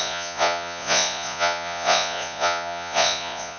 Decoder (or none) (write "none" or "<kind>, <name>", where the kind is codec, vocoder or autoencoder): vocoder, Vocos